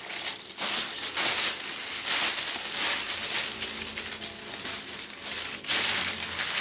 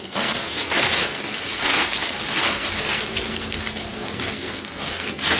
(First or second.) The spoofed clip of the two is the second